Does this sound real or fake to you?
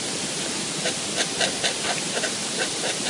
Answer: fake